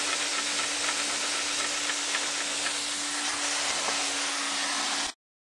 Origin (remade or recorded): recorded